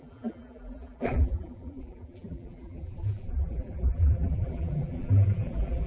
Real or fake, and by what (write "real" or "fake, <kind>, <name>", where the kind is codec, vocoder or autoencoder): fake, vocoder, BigVGAN v2